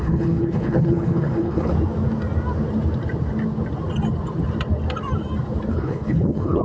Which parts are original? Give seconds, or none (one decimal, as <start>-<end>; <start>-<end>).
1.7-5.7